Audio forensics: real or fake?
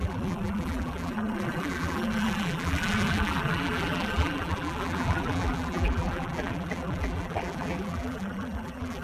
fake